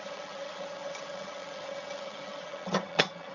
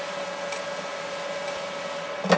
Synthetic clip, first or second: first